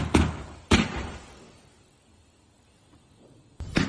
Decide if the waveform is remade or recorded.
recorded